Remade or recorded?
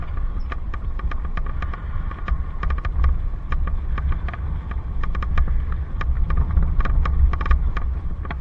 recorded